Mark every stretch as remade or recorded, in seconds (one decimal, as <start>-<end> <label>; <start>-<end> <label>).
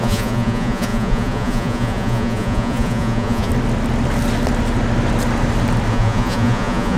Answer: 0.0-3.5 remade; 3.5-5.9 recorded; 5.9-7.0 remade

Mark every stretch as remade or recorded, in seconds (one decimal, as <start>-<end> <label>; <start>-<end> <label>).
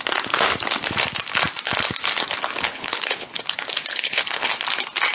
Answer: 0.0-2.7 recorded; 2.7-3.4 remade; 3.4-3.9 recorded; 3.9-4.5 remade; 4.5-5.1 recorded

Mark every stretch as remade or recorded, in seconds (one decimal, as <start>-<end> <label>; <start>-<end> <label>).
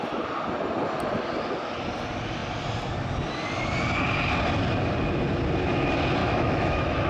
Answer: 0.0-6.2 recorded; 6.2-7.1 remade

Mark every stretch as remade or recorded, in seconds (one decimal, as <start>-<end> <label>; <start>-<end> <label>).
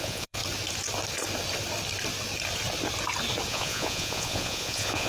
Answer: 0.0-0.4 remade; 0.4-3.5 recorded; 3.5-5.1 remade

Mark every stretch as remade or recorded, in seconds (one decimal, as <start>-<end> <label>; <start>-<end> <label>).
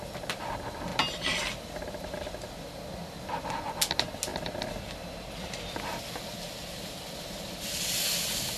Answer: 0.0-4.3 recorded; 4.3-7.1 remade; 7.1-8.6 recorded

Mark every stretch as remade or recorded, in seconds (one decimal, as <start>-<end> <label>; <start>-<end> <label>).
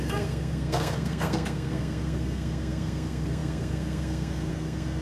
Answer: 0.0-5.0 remade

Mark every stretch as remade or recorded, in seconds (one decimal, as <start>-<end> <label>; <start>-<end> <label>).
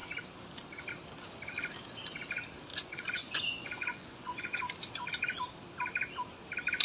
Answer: 0.0-2.7 recorded; 2.7-4.6 remade; 4.6-6.8 recorded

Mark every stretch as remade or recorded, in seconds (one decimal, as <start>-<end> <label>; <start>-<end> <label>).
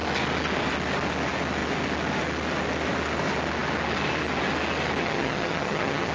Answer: 0.0-5.0 recorded; 5.0-6.1 remade